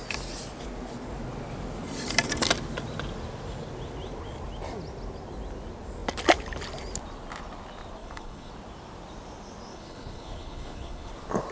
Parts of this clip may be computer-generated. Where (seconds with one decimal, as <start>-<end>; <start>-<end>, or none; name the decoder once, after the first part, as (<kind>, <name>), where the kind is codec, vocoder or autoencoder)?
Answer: 8.0-8.5 (codec, HILCodec); 9.7-11.1